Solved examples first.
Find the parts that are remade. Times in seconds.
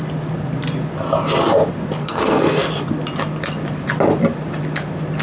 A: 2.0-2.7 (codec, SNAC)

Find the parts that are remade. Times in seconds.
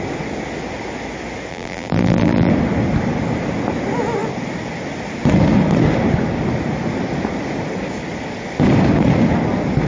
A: 1.5-2.5 (vocoder, BigVGAN v2)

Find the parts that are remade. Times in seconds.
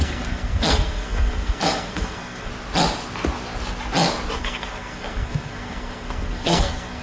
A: 0.0-2.5 (codec, SNAC); 4.4-7.0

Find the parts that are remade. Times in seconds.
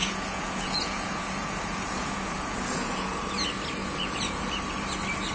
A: 0.0-3.2 (vocoder, Vocos); 3.8-4.5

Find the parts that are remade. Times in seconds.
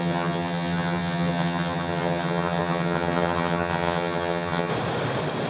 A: 0.0-4.7 (vocoder, HiFi-GAN)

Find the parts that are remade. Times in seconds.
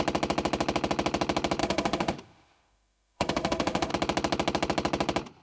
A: 1.6-3.9 (autoencoder, DAC-VAE)